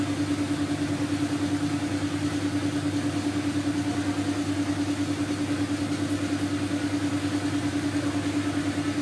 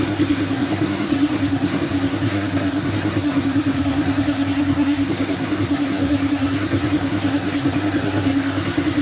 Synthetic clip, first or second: second